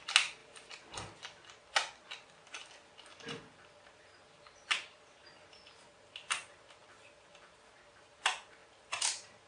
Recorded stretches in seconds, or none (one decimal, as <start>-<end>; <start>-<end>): 0.0-9.5